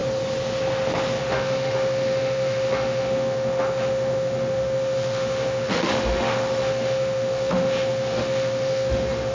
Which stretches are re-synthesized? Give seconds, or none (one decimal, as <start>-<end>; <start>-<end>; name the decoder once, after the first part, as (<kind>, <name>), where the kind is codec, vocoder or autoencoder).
1.2-9.3 (autoencoder, DAC-VAE)